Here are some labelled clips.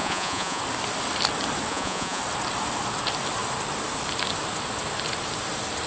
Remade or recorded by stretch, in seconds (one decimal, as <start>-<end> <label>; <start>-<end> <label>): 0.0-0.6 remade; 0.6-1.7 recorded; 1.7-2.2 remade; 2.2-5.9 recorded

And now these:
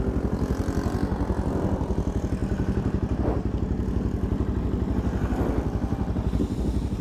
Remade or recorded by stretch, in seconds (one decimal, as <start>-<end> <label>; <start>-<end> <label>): 0.0-7.0 recorded

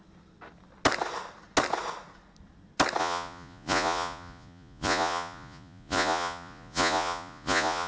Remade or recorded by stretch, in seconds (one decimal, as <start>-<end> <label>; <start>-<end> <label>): 0.0-3.0 recorded; 3.0-7.9 remade